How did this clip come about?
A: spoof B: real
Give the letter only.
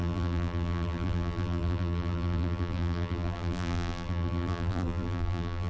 A